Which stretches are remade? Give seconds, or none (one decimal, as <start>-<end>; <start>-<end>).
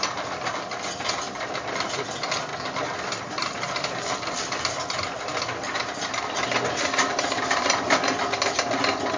0.0-2.5; 3.2-5.3; 6.7-9.2